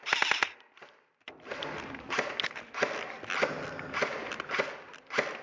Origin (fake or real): real